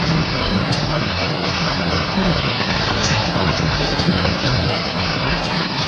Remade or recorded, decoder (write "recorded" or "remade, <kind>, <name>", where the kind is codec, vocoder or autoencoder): remade, codec, SNAC